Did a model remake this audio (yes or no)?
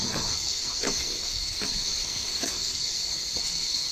yes